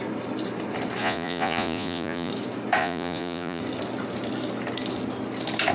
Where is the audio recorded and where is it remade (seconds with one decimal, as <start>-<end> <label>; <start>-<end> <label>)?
0.0-1.0 recorded; 1.0-2.3 remade; 2.3-2.8 recorded; 2.8-3.6 remade; 3.6-5.7 recorded